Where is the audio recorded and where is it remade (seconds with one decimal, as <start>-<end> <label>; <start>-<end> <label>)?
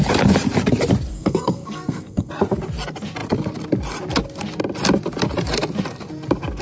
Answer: 0.0-1.1 recorded; 1.1-2.3 remade; 2.3-6.6 recorded